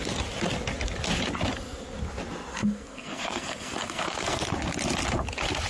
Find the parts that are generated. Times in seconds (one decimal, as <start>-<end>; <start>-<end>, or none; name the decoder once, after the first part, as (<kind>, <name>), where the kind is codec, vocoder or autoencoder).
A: 2.5-4.4 (codec, SNAC)